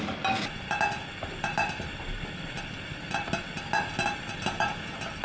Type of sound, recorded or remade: recorded